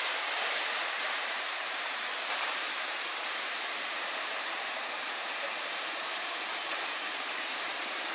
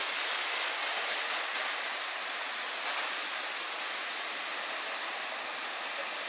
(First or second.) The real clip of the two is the second